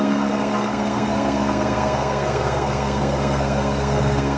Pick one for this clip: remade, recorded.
remade